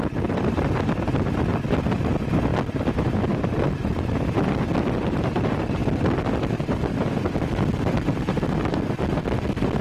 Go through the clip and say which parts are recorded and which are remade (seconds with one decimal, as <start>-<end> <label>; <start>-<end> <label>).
0.0-9.8 recorded